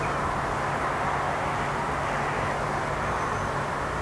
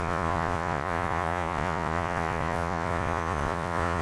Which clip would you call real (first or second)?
first